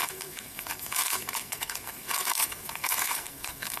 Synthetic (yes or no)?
yes